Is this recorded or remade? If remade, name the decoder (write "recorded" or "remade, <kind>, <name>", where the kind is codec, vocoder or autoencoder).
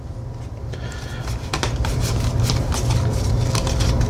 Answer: recorded